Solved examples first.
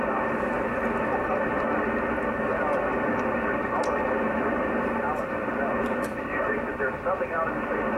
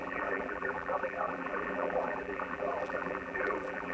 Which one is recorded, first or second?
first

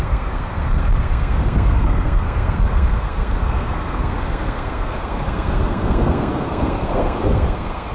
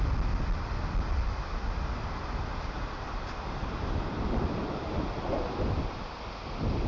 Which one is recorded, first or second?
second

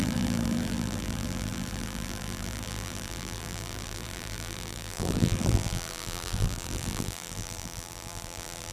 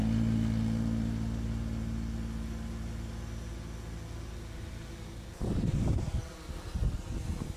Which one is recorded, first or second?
second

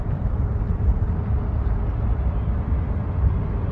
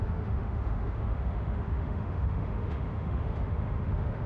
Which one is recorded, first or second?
first